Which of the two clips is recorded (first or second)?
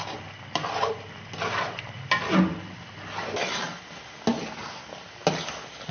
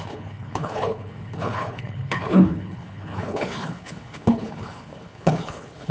first